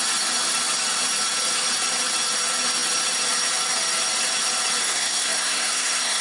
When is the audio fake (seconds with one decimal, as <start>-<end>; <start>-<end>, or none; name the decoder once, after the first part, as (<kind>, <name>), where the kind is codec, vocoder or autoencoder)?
4.8-6.2 (codec, SNAC)